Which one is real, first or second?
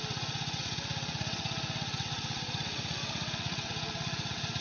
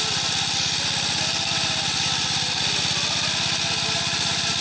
second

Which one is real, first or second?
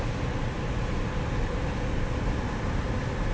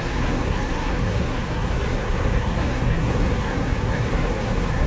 first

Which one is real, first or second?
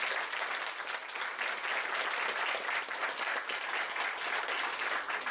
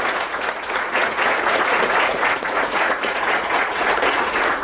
first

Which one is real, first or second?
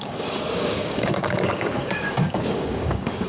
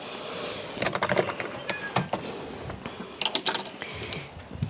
second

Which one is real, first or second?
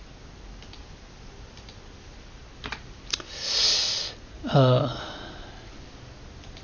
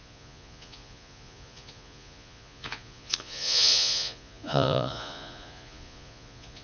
first